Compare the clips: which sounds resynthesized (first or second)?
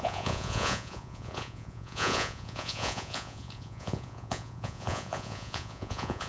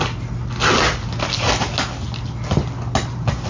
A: first